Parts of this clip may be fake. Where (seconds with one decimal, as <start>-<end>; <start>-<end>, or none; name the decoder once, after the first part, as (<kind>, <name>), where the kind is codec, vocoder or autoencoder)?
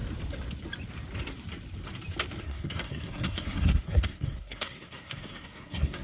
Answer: 2.4-6.0 (codec, SNAC)